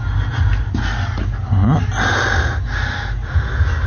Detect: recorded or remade recorded